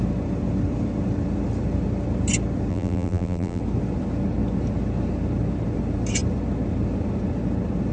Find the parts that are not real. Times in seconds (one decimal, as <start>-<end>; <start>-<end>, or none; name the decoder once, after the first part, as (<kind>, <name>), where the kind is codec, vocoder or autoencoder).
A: 2.7-3.6 (vocoder, BigVGAN v2)